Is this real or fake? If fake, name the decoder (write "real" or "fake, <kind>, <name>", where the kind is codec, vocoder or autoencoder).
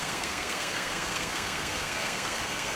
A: fake, codec, SNAC